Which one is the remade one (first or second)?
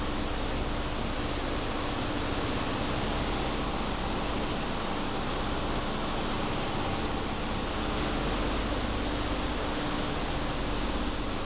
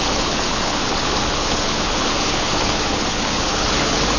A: second